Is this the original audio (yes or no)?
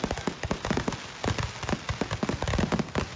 yes